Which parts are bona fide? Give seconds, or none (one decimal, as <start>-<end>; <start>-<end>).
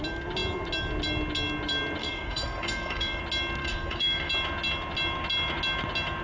0.0-2.0; 3.2-3.6; 4.3-6.2